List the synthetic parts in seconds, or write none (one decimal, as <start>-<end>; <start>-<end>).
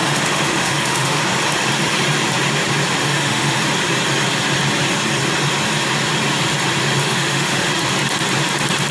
0.0-1.2; 3.0-3.6; 7.0-7.7